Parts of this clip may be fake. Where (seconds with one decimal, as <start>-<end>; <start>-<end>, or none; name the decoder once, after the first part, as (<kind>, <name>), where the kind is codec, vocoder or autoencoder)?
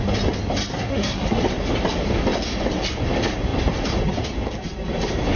0.7-1.4 (codec, SNAC)